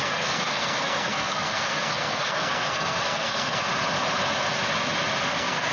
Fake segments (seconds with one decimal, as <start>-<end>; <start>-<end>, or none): 0.0-3.7; 5.2-5.7